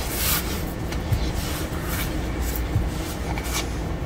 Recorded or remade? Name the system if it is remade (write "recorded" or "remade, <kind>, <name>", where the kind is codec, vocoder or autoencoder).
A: recorded